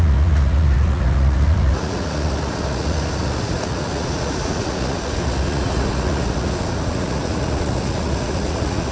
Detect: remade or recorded remade